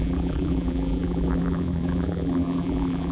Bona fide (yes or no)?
no